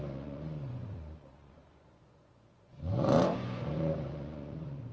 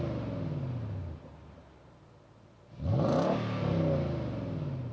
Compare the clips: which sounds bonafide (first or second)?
second